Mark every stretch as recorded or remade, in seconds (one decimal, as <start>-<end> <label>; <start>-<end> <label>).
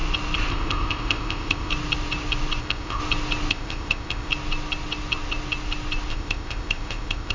0.0-0.5 recorded; 0.5-1.7 remade; 1.7-2.6 recorded; 2.6-3.0 remade; 3.0-3.5 recorded; 3.5-4.3 remade; 4.3-6.1 recorded; 6.1-7.3 remade